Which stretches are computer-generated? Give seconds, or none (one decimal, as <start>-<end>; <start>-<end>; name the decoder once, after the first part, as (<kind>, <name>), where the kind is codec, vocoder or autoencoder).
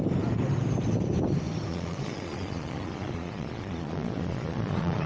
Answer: 1.7-5.1 (vocoder, Vocos)